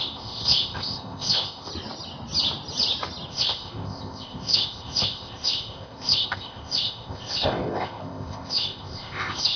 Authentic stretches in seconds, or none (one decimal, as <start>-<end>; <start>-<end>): 1.7-3.3